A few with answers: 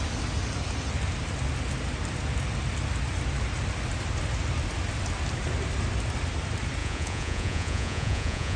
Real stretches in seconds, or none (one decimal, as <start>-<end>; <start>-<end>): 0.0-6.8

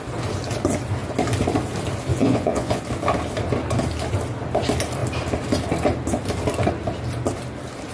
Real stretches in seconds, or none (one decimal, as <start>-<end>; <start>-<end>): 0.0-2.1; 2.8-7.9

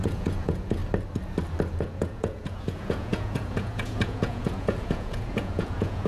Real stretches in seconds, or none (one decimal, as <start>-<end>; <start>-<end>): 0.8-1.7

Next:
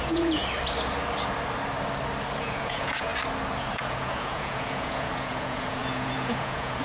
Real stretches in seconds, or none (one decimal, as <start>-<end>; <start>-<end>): 0.4-2.4; 3.1-3.6

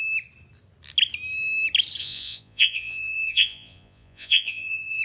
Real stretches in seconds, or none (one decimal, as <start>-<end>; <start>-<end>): 0.0-2.0